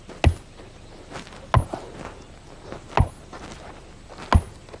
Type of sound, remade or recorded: recorded